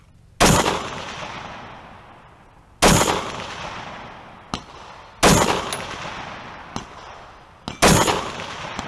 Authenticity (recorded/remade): recorded